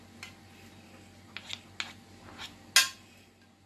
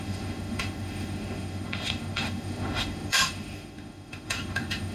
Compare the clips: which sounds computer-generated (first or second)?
second